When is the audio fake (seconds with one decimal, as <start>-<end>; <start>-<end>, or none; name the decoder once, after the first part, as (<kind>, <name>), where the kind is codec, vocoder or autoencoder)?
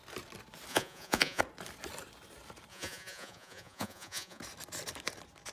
0.7-1.4 (vocoder, Vocos); 2.7-4.4